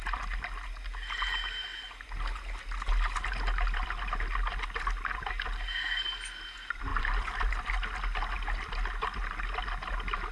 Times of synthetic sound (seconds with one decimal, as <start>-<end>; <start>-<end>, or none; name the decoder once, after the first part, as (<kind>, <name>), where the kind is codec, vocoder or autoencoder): 6.9-7.7 (vocoder, BigVGAN v2)